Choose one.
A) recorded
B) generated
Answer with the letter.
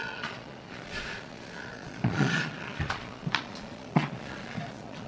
B